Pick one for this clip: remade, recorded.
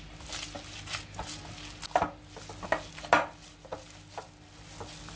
recorded